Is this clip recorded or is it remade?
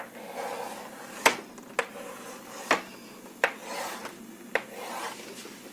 recorded